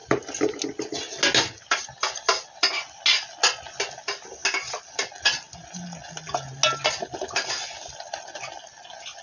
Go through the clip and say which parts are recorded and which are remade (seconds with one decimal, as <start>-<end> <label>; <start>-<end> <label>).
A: 0.0-9.2 recorded